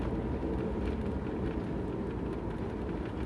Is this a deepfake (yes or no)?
no